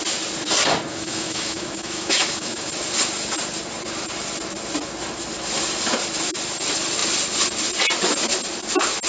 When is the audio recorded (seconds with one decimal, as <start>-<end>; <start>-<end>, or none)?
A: 0.0-0.9; 2.7-9.1